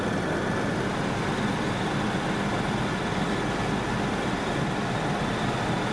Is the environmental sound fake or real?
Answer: real